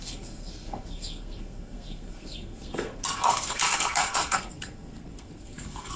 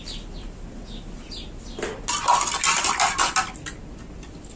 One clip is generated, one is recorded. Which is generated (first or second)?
first